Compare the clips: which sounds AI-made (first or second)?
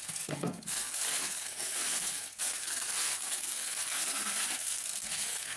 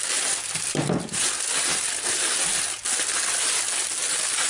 first